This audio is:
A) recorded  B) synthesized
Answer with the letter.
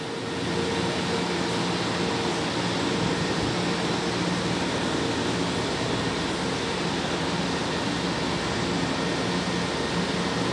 A